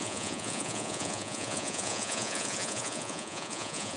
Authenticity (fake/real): fake